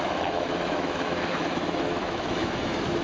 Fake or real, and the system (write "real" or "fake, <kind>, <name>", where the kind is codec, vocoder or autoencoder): fake, autoencoder, DAC-VAE